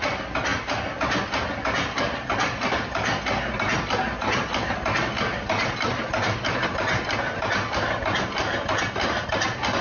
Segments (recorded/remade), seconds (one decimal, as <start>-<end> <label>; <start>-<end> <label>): 0.0-9.8 recorded